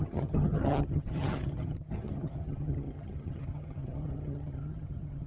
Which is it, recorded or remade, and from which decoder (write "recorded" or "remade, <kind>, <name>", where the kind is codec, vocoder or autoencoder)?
remade, vocoder, HiFi-GAN